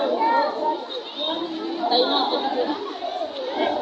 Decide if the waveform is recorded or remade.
recorded